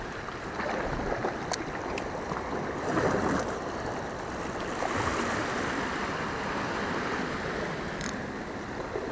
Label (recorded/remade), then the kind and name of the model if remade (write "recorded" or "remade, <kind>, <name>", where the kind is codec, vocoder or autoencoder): recorded